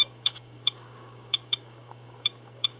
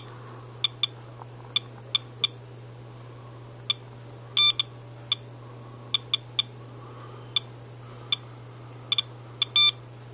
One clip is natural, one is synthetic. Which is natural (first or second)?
second